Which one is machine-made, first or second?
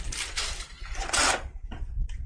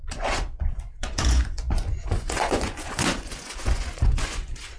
second